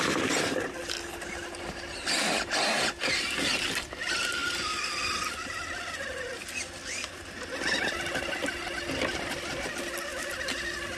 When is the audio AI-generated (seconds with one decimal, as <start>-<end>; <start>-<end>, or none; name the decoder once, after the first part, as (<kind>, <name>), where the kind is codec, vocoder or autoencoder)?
none